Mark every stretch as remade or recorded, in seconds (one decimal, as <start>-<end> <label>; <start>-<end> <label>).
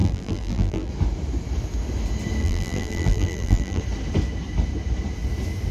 0.0-0.9 remade; 0.9-2.4 recorded; 2.4-3.8 remade; 3.8-5.7 recorded